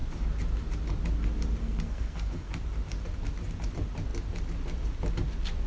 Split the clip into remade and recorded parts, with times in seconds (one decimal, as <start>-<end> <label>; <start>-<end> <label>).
0.0-1.6 recorded; 1.6-2.5 remade; 2.5-5.7 recorded